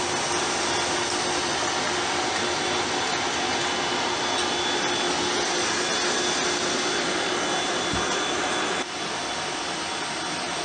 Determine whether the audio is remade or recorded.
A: recorded